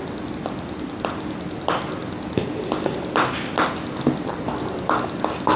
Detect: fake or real real